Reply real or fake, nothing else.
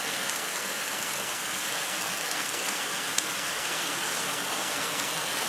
fake